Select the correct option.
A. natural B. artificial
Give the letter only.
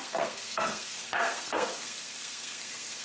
B